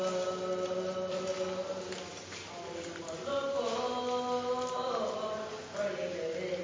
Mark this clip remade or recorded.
recorded